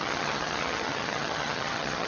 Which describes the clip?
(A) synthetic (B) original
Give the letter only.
A